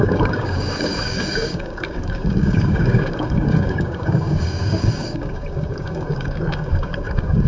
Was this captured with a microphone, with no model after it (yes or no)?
no